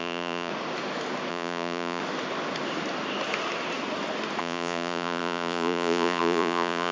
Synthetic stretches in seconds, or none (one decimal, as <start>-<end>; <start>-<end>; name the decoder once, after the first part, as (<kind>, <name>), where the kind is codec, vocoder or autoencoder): 0.0-0.5 (vocoder, Vocos); 1.3-2.0; 4.4-6.9